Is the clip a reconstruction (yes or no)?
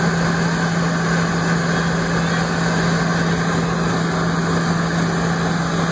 no